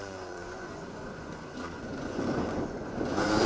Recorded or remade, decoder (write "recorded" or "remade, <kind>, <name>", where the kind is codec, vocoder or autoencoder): remade, vocoder, Vocos